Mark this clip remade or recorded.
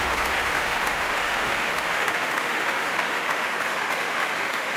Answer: remade